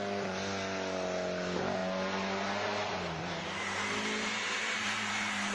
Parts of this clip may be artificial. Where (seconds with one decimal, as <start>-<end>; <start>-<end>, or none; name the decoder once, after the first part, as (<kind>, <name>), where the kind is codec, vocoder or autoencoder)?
none